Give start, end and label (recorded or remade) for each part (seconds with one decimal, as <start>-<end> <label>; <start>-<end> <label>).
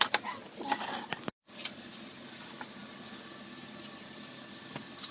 0.0-5.1 recorded